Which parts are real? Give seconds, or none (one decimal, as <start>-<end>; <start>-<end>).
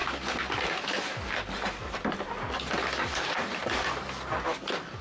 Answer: 0.0-5.0